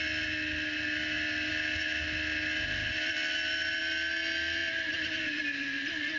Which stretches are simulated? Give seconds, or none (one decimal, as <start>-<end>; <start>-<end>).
none